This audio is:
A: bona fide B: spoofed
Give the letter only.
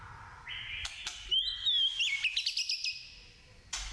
A